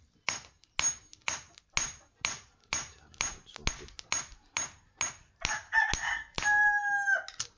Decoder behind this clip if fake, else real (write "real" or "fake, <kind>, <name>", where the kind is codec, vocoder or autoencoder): real